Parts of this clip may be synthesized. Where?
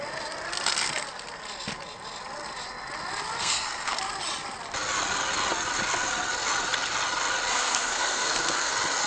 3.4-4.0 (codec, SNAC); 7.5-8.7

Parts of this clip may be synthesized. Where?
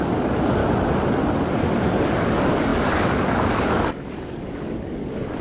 0.0-0.6 (codec, DAC); 1.6-5.4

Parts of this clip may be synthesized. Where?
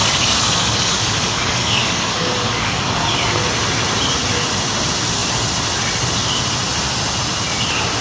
0.0-2.8 (codec, DAC)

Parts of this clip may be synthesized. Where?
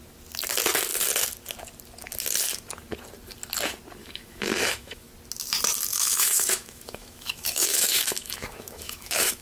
4.0-5.1 (autoencoder, DAC-VAE); 5.9-9.4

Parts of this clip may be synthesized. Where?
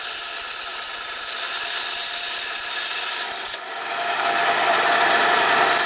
0.0-0.7 (vocoder, BigVGAN v2); 1.4-5.9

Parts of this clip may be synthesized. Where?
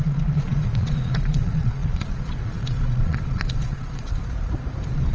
0.0-4.1 (vocoder, Vocos)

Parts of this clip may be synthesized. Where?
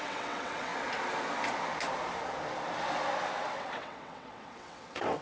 0.0-0.7 (vocoder, WaveNeXt); 3.5-5.2